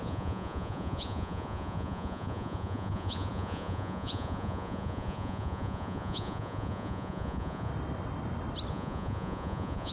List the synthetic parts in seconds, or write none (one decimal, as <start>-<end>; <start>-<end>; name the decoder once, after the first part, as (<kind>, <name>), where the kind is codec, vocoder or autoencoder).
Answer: 0.0-7.7 (vocoder, Vocos); 8.7-9.9